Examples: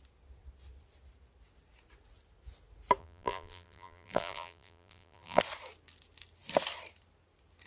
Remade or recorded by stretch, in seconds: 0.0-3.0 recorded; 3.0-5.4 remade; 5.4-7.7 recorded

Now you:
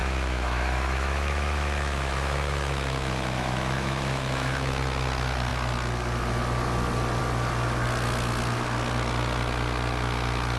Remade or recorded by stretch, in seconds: 0.0-4.8 remade; 4.8-10.6 recorded

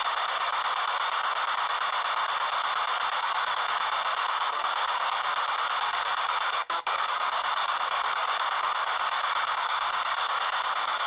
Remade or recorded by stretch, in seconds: 0.0-0.5 remade; 0.5-3.2 recorded; 3.2-5.3 remade; 5.3-5.8 recorded; 5.8-11.1 remade

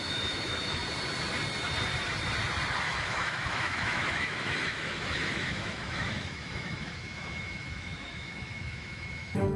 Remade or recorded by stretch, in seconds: 0.0-0.8 remade; 0.8-2.8 recorded; 2.8-9.6 remade

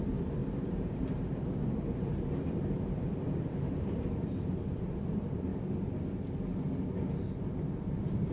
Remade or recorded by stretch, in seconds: 0.0-5.5 remade; 5.5-7.4 recorded; 7.4-8.3 remade

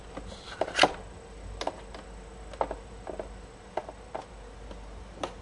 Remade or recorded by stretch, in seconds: 0.0-5.4 recorded